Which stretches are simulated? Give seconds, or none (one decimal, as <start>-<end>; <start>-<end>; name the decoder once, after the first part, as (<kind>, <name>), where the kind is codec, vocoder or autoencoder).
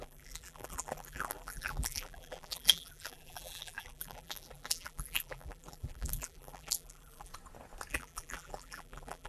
0.0-7.3 (vocoder, BigVGAN v2); 7.9-9.3